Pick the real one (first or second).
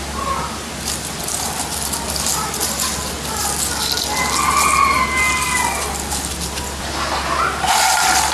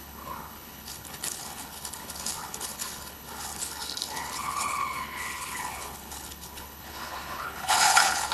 first